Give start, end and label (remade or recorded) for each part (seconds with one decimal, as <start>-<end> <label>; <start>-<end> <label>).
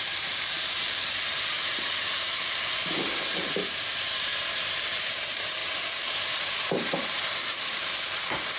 0.0-4.3 remade; 4.3-5.0 recorded; 5.0-8.6 remade